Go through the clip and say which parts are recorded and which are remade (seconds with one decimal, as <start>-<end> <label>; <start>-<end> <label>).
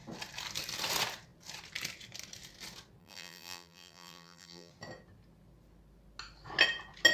0.0-3.0 recorded; 3.0-4.7 remade; 4.7-7.1 recorded